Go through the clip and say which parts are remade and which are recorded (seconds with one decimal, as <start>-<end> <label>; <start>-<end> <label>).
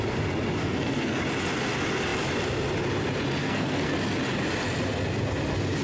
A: 0.0-0.6 recorded; 0.6-1.2 remade; 1.2-3.4 recorded; 3.4-3.9 remade; 3.9-5.8 recorded